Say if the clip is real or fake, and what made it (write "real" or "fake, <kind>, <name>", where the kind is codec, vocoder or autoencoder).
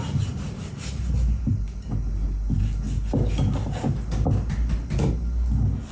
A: real